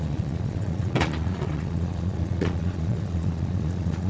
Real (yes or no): no